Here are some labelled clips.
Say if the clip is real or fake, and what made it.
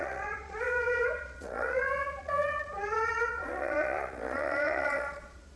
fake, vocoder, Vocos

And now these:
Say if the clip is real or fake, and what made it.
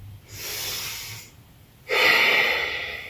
real